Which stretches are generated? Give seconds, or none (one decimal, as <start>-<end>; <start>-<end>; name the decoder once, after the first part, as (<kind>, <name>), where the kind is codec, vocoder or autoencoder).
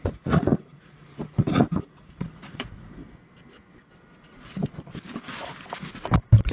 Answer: 0.0-3.0 (vocoder, Vocos)